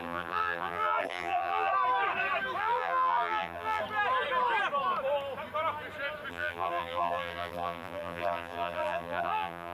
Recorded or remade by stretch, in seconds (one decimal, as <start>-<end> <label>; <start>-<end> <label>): 0.0-1.7 remade; 1.7-2.6 recorded; 2.6-3.8 remade; 3.8-6.3 recorded; 6.3-9.7 remade